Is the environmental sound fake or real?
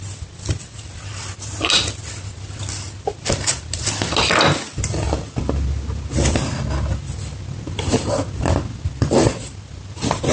real